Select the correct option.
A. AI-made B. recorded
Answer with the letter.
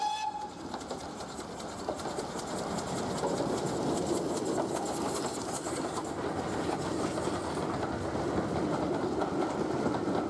B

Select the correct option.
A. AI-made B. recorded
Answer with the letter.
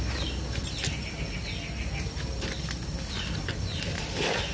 B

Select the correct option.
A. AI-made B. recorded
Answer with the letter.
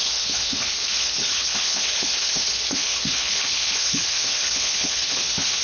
A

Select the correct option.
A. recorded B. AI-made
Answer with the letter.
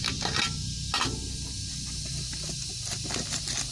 A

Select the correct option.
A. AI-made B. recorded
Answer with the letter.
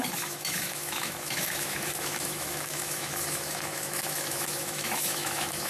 A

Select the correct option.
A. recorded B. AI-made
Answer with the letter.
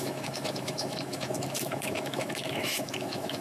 B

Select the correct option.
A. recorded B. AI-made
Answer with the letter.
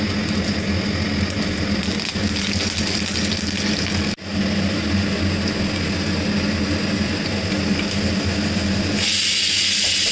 A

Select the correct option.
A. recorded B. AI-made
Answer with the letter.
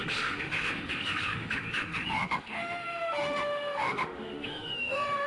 B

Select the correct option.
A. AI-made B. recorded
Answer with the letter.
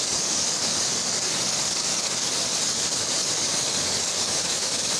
A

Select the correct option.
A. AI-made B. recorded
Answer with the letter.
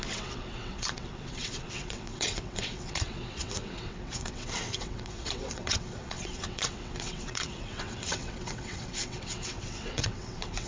A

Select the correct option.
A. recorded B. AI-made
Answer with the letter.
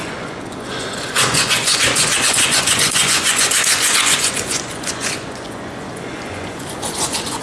B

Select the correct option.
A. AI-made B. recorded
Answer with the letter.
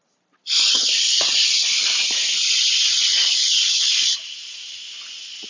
B